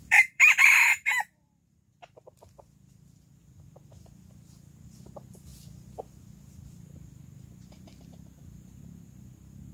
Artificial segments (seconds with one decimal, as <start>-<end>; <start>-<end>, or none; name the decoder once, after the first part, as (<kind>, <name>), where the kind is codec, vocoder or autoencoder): 0.0-1.2 (vocoder, BigVGAN v2)